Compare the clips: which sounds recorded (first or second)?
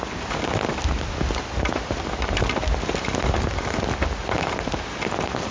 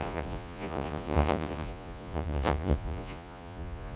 first